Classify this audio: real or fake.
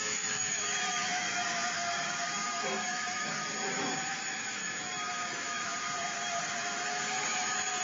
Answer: fake